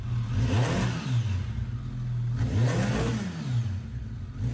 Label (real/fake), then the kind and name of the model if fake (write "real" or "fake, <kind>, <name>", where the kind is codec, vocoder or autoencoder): real